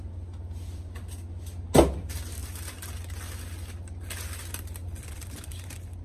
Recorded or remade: recorded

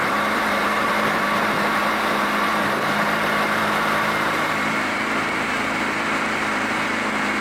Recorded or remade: remade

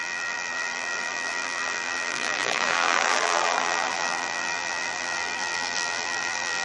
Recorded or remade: remade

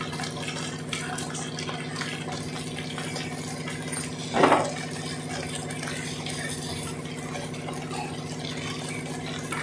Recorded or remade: recorded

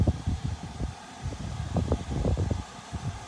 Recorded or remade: remade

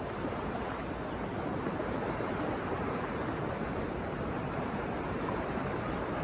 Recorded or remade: remade